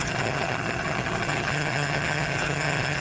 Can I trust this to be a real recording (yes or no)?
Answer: no